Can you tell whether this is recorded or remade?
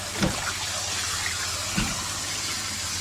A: recorded